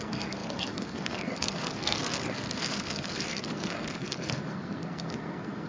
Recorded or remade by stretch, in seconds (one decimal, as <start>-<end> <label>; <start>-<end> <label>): 0.0-5.7 remade